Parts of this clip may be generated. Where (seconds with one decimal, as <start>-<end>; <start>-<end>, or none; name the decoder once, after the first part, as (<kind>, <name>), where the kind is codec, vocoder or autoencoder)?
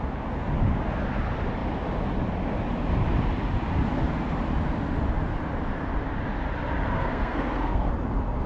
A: 6.9-7.9 (codec, SNAC)